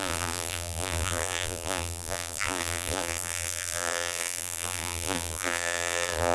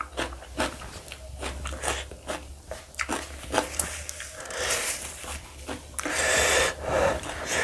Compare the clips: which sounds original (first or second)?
second